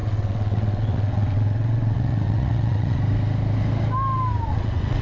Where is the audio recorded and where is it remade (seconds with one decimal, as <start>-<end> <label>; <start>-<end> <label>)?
0.0-3.0 remade; 3.0-4.5 recorded; 4.5-5.0 remade